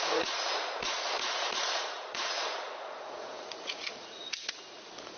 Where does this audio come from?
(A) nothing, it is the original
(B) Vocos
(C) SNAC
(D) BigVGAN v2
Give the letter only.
B